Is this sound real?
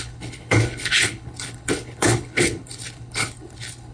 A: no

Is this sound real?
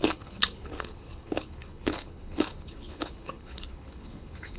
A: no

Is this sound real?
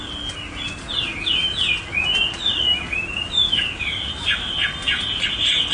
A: yes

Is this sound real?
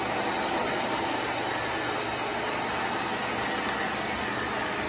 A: yes